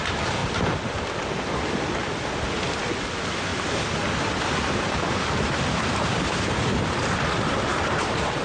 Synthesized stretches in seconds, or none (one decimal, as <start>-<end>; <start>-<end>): 0.0-0.4; 1.9-3.5; 4.9-8.4